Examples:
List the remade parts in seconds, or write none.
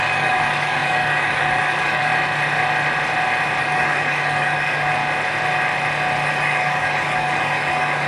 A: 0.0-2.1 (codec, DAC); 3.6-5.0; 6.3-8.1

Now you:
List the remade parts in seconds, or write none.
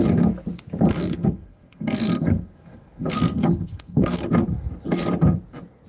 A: 0.9-4.3 (codec, SNAC)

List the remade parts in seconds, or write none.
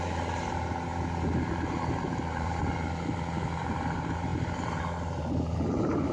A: 0.0-0.9 (vocoder, BigVGAN v2); 1.5-2.6; 3.6-6.1